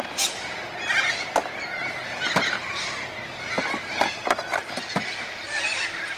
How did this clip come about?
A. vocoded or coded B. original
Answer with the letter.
B